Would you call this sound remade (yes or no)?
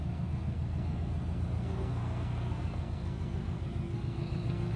yes